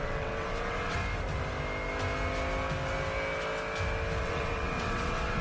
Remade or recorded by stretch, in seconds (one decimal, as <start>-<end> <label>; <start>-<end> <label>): 0.0-1.0 remade; 1.0-4.2 recorded; 4.2-5.4 remade